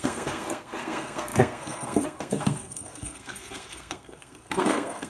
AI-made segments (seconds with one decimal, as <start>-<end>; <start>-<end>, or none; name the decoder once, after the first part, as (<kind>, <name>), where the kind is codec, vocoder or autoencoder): 0.0-5.1 (codec, SNAC)